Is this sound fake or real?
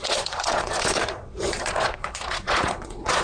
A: fake